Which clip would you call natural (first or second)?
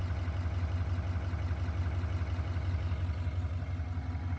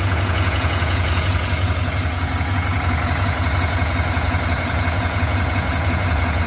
first